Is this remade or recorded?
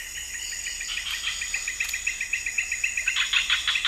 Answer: recorded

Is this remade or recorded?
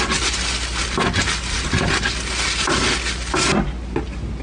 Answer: recorded